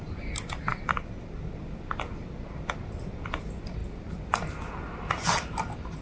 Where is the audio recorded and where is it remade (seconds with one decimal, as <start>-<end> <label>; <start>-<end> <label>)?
0.0-6.0 recorded